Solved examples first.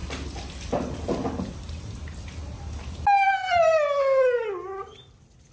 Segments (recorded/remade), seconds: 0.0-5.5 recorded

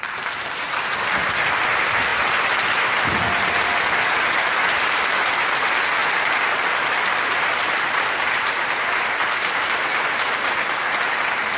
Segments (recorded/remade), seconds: 0.0-6.0 recorded; 6.0-8.6 remade; 8.6-11.6 recorded

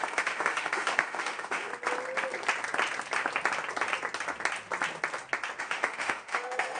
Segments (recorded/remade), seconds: 0.0-1.7 remade; 1.7-5.6 recorded; 5.6-6.8 remade